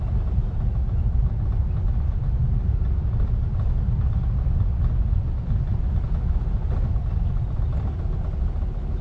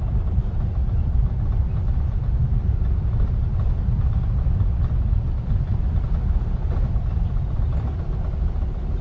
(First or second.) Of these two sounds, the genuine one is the first